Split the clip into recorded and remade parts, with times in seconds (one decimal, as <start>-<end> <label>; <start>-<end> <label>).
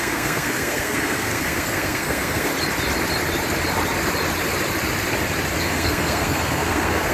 0.0-2.5 remade; 2.5-5.6 recorded; 5.6-7.1 remade